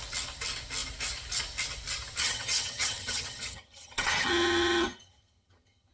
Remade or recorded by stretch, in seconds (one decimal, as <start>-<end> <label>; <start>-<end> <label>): 0.0-2.2 recorded; 2.2-5.9 remade